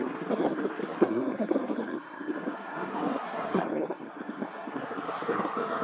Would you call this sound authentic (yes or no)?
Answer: no